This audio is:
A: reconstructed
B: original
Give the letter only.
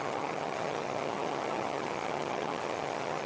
A